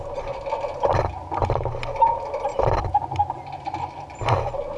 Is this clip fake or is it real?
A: real